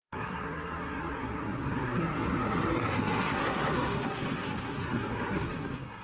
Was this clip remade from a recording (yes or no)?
yes